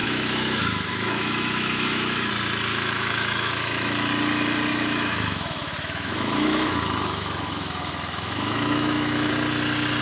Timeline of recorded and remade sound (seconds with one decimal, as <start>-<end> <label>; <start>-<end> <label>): 0.0-2.3 remade; 2.3-2.7 recorded; 2.7-4.1 remade; 4.1-4.7 recorded; 4.7-9.3 remade; 9.3-10.0 recorded